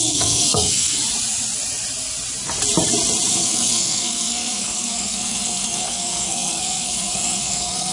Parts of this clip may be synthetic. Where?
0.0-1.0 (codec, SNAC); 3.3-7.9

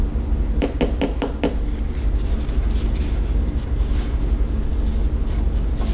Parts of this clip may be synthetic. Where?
none

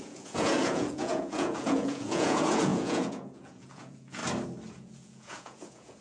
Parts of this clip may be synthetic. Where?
0.0-4.2 (vocoder, Vocos); 4.7-6.0

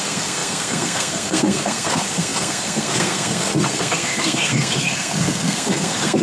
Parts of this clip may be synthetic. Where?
0.0-6.2 (codec, SNAC)